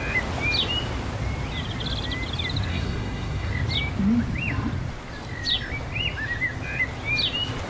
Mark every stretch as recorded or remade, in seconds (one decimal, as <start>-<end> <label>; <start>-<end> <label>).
0.0-2.7 recorded; 2.7-3.5 remade; 3.5-7.7 recorded